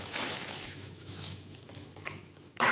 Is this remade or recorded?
remade